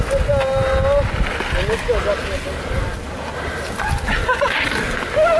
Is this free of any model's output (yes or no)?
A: yes